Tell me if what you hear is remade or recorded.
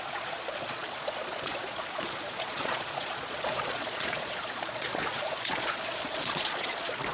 remade